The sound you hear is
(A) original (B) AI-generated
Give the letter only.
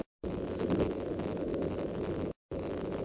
A